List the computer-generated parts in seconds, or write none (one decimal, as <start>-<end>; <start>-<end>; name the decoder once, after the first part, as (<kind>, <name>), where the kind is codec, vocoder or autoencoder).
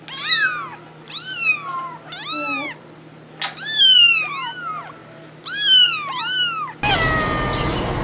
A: none